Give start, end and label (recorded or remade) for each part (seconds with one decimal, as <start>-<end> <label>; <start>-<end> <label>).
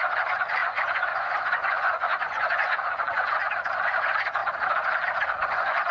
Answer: 0.0-4.4 remade; 4.4-5.3 recorded; 5.3-5.9 remade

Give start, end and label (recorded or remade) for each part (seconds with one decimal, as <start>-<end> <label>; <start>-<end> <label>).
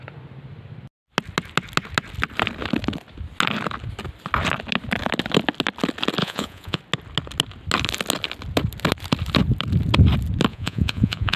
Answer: 0.0-6.2 recorded; 6.2-6.8 remade; 6.8-10.5 recorded; 10.5-11.4 remade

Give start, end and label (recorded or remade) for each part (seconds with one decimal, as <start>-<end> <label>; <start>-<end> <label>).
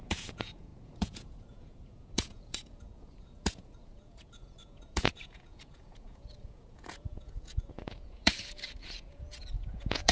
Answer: 0.0-10.1 remade